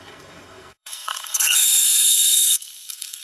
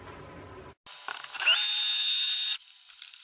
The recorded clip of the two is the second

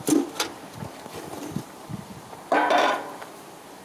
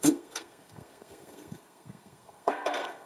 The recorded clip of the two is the first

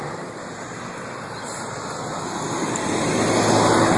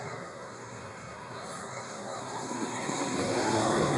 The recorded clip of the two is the first